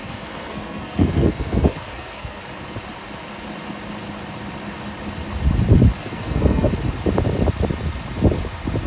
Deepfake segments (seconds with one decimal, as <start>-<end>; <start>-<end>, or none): 0.0-2.4; 6.0-6.7